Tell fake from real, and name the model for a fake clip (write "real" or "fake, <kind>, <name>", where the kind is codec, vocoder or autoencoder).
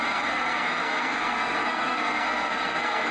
fake, codec, SNAC